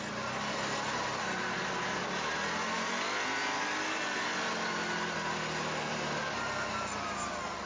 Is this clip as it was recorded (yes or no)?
yes